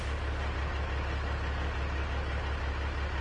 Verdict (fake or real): real